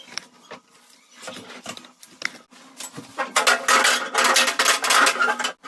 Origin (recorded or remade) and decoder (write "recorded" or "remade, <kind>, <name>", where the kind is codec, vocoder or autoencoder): recorded